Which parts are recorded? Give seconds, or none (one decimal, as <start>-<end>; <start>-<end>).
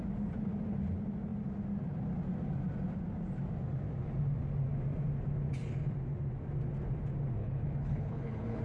0.0-7.4